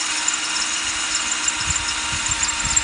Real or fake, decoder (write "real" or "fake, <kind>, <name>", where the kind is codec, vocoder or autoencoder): real